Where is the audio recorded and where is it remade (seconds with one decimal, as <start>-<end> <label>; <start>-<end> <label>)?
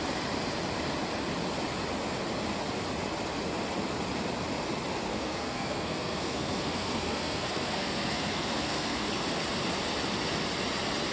0.0-5.1 recorded; 5.1-9.1 remade; 9.1-11.1 recorded